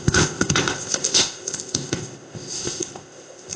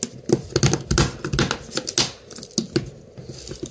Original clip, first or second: second